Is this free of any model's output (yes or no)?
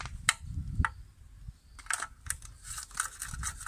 yes